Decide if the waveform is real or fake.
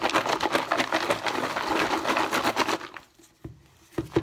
real